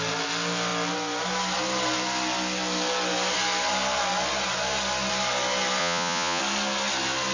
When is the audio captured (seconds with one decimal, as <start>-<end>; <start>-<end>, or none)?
0.0-5.8; 6.4-7.3